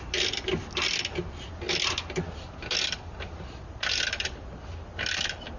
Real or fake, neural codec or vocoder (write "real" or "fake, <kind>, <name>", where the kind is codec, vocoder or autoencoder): real